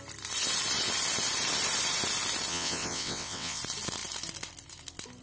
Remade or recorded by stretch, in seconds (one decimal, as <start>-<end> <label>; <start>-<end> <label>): 0.0-2.5 recorded; 2.5-3.6 remade; 3.6-5.2 recorded

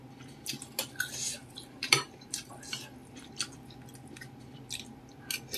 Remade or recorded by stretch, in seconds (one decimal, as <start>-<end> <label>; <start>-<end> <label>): 0.0-1.4 recorded; 1.4-2.5 remade; 2.5-5.6 recorded

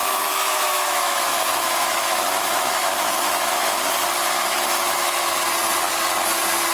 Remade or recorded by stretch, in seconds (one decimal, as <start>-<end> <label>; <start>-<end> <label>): 0.0-3.8 remade; 3.8-4.2 recorded; 4.2-5.4 remade; 5.4-6.7 recorded